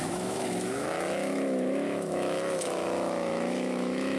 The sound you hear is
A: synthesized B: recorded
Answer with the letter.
A